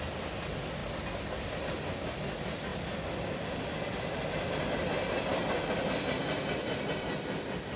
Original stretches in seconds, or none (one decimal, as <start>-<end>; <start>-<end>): 0.0-7.8